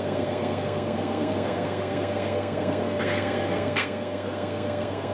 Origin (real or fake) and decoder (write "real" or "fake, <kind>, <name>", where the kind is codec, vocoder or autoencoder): fake, codec, SNAC